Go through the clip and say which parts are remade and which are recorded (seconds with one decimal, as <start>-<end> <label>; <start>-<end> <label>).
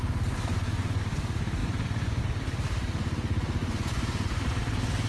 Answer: 0.0-0.5 recorded; 0.5-1.0 remade; 1.0-1.6 recorded; 1.6-2.2 remade; 2.2-3.6 recorded; 3.6-4.4 remade; 4.4-5.1 recorded